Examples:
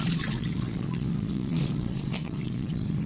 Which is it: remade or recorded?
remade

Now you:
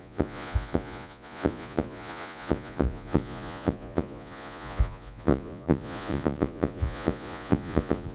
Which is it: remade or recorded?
remade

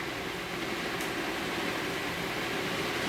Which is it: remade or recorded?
recorded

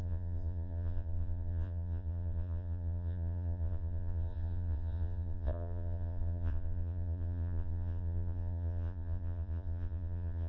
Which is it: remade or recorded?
remade